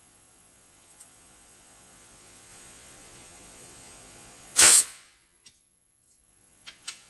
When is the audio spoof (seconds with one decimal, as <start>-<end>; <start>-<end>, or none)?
0.0-7.1